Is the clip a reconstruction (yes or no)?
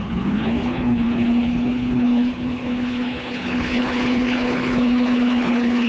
yes